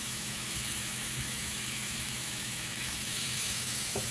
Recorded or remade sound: remade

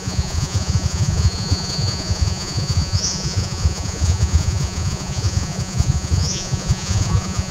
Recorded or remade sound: remade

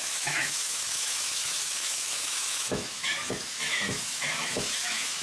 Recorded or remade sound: remade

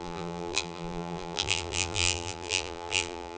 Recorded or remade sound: remade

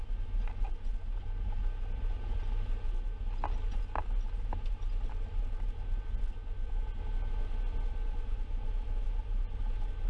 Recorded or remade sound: recorded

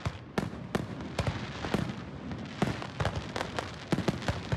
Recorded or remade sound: recorded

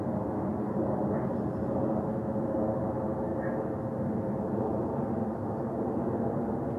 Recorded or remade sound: recorded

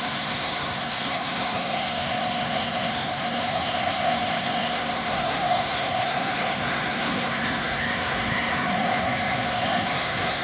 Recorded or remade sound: remade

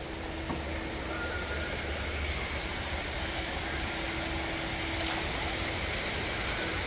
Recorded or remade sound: recorded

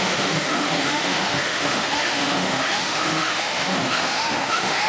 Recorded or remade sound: remade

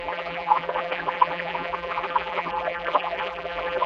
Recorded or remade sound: remade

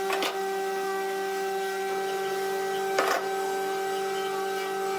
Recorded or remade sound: recorded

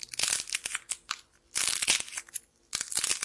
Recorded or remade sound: recorded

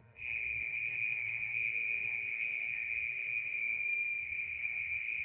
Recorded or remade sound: remade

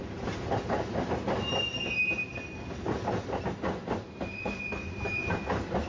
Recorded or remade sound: recorded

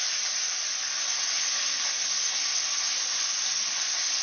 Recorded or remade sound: recorded